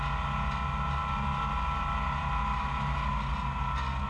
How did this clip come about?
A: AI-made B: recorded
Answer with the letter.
B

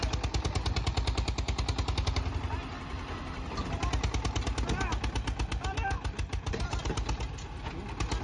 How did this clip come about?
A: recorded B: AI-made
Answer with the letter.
A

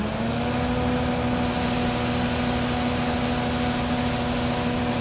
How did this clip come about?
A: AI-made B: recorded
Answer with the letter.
B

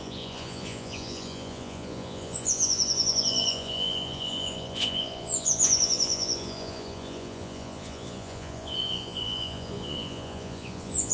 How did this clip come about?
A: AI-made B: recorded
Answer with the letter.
A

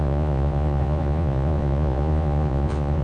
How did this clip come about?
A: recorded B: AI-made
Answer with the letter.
B